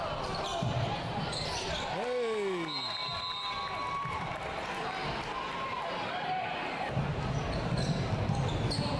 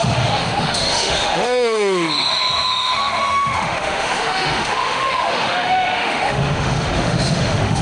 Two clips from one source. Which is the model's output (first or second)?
second